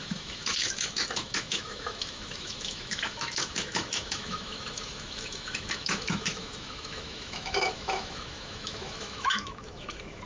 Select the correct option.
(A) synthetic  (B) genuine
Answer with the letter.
A